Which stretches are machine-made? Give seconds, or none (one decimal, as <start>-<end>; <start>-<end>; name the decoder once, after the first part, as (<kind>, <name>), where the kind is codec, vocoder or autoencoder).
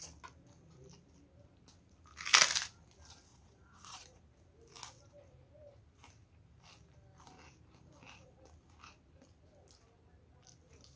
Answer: 3.3-4.2 (vocoder, Vocos)